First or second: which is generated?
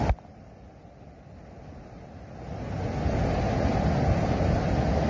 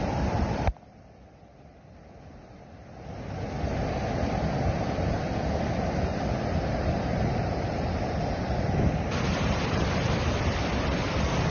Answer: second